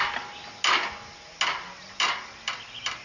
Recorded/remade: recorded